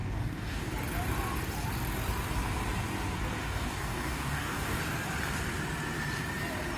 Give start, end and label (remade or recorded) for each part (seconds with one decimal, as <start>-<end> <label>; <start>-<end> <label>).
0.0-0.7 remade; 0.7-3.4 recorded; 3.4-4.8 remade; 4.8-6.8 recorded